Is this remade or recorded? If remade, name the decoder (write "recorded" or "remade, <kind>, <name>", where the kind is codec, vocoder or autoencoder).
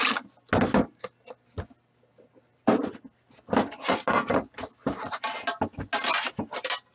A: recorded